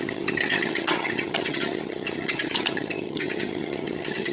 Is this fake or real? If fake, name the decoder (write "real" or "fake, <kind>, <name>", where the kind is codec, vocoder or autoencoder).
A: fake, vocoder, HiFi-GAN